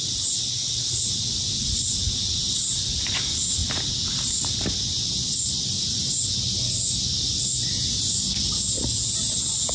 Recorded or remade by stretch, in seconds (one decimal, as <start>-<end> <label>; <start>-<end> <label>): 0.0-9.7 recorded